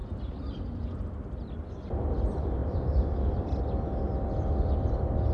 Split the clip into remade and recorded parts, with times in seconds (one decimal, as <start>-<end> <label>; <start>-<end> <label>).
0.0-2.0 remade; 2.0-2.6 recorded; 2.6-3.6 remade; 3.6-5.3 recorded